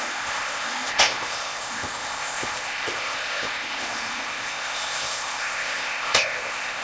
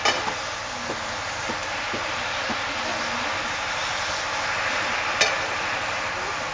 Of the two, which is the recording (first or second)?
second